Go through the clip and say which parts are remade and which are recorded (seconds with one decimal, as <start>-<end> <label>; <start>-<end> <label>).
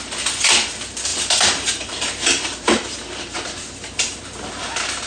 0.0-1.1 recorded; 1.1-4.2 remade; 4.2-5.1 recorded